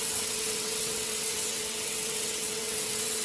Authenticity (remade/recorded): remade